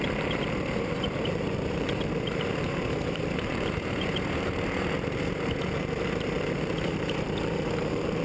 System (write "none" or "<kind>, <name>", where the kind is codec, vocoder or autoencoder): vocoder, BigVGAN v2